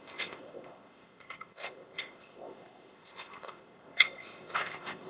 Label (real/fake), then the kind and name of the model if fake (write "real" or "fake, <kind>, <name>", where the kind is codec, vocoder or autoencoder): fake, codec, ZipCodec